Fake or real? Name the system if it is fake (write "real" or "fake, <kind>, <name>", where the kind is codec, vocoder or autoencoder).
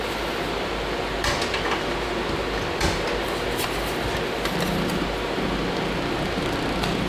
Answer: real